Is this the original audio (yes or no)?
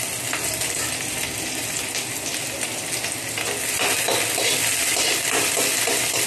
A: yes